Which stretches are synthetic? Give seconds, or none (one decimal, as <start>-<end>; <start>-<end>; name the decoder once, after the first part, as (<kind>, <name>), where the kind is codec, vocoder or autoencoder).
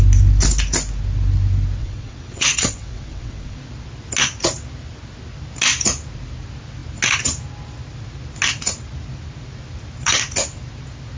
1.8-3.6 (vocoder, WaveNeXt)